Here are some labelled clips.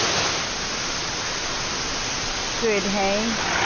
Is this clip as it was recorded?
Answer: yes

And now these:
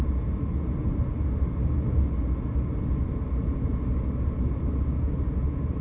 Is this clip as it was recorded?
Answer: yes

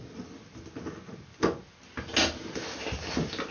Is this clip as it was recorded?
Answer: yes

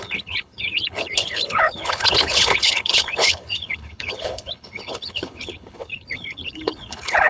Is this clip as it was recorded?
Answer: no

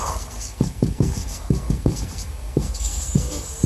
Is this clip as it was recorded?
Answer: no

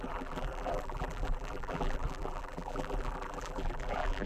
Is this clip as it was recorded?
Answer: no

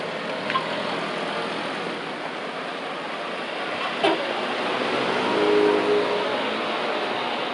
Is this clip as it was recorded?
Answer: yes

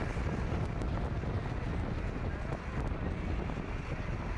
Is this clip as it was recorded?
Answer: yes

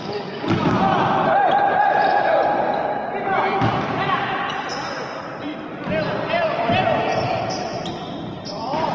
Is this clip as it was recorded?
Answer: no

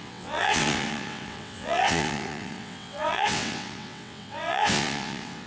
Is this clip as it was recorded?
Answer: no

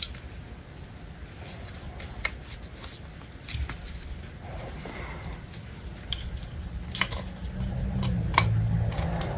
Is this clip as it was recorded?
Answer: yes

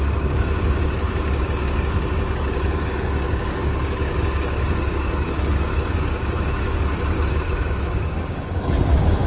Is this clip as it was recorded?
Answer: no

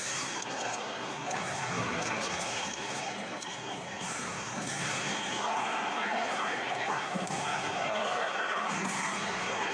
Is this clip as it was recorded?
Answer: no